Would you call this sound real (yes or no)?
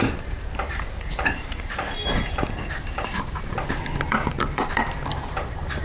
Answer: no